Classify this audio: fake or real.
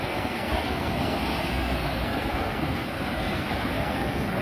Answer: fake